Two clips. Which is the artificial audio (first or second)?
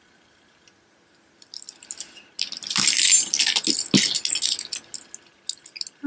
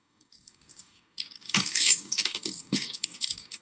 second